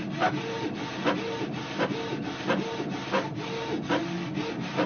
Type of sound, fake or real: real